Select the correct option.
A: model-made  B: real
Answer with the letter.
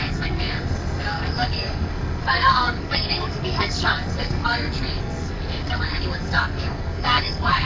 A